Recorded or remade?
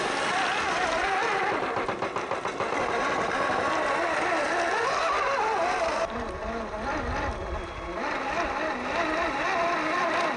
recorded